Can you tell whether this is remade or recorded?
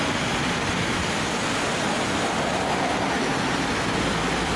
recorded